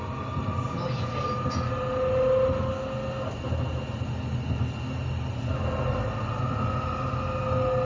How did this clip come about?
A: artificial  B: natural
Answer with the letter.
B